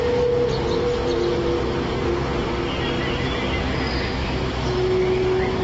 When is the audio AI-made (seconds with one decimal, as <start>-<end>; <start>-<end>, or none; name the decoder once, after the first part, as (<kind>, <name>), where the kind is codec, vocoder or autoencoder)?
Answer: none